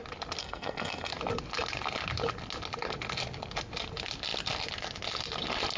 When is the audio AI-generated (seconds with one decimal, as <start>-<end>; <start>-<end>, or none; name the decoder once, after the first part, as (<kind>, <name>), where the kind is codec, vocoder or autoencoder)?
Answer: 0.4-1.1 (codec, SNAC)